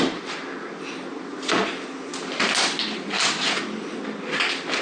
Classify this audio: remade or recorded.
recorded